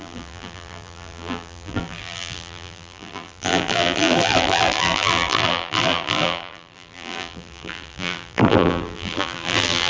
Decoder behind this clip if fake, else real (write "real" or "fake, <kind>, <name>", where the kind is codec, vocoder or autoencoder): fake, vocoder, BigVGAN v2